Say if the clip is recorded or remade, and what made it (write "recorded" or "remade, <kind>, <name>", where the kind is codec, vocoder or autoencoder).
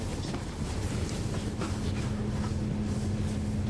recorded